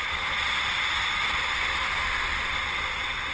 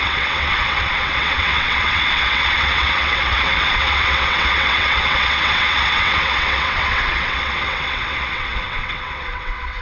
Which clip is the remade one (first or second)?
second